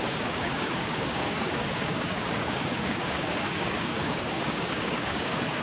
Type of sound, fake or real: fake